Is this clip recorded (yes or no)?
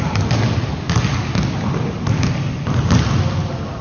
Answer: yes